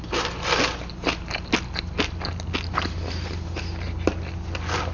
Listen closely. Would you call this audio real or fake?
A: real